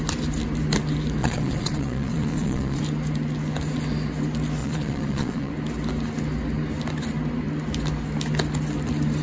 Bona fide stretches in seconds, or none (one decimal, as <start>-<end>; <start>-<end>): 0.0-1.2; 2.8-4.6; 5.5-9.2